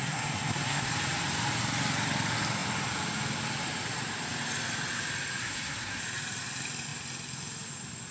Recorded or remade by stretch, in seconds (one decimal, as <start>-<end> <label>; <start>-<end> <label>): 0.0-0.9 remade; 0.9-5.4 recorded; 5.4-6.0 remade; 6.0-8.1 recorded